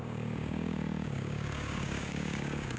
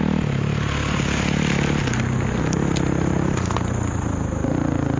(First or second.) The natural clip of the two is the second